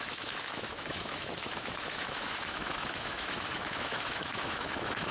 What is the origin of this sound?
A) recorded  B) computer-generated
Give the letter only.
B